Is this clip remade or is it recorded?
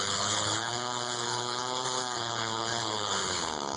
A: remade